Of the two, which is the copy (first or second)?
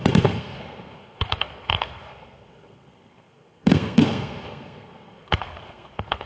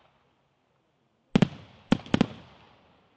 first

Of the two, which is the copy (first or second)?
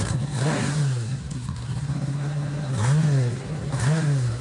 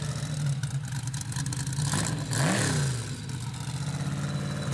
first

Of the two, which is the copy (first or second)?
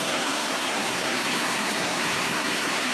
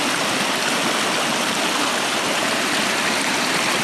first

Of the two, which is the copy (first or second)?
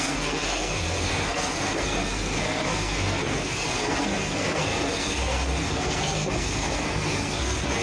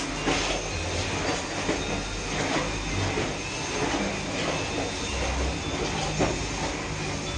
first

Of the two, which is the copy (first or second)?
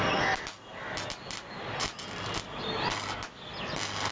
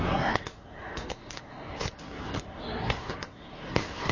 second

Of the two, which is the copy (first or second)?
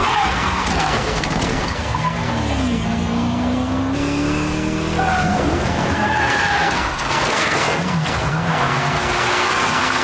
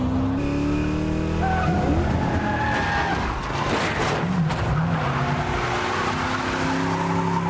first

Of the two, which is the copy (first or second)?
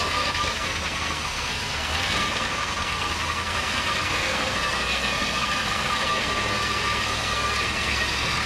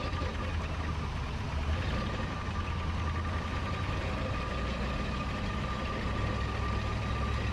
first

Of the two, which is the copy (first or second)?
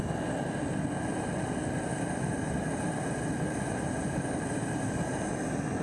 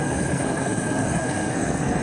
second